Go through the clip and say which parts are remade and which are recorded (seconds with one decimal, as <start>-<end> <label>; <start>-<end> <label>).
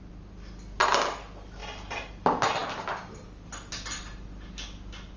0.0-5.2 recorded